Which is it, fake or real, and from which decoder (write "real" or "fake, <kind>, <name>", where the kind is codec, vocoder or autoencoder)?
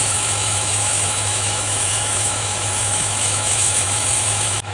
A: fake, autoencoder, DAC-VAE